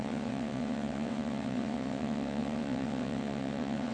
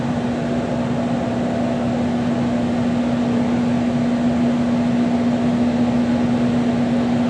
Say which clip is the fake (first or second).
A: first